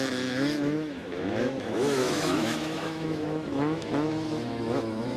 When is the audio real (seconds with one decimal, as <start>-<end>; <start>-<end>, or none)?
none